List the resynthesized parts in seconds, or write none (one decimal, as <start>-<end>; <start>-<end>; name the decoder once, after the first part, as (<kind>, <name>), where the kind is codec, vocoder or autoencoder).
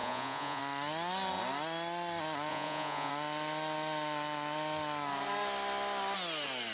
0.0-0.6 (vocoder, Vocos); 2.5-3.1